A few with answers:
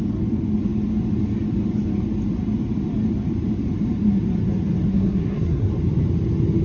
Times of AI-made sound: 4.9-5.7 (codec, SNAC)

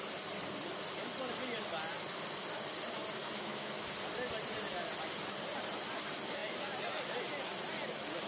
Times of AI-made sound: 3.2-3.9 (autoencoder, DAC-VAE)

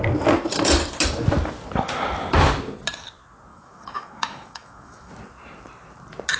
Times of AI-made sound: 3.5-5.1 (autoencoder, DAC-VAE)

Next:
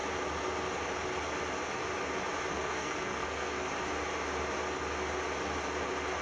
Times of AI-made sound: 2.5-3.7 (codec, SNAC)